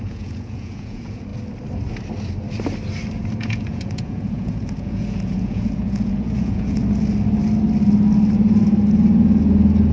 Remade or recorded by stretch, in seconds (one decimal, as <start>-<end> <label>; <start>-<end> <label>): 0.0-1.3 remade; 1.3-3.4 recorded; 3.4-6.8 remade; 6.8-9.9 recorded